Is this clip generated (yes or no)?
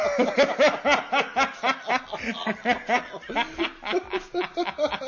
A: no